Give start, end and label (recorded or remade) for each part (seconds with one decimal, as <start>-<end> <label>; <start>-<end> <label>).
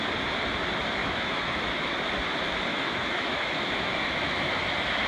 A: 0.0-1.0 recorded; 1.0-1.9 remade; 1.9-2.7 recorded; 2.7-4.5 remade; 4.5-5.1 recorded